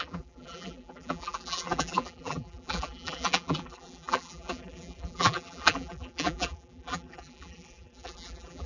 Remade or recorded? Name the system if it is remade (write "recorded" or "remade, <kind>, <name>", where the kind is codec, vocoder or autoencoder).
remade, vocoder, BigVGAN v2